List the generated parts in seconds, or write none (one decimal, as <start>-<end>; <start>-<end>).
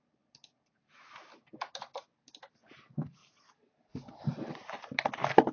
none